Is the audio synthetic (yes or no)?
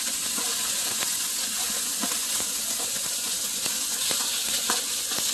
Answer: yes